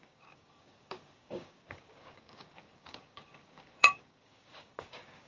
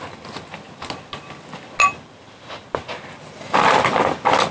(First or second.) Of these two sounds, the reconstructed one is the first